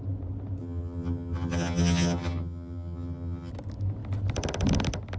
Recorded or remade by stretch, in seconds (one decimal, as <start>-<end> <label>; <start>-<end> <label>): 0.0-0.6 recorded; 0.6-3.5 remade; 3.5-5.2 recorded